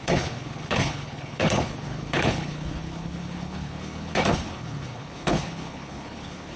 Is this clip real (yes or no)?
no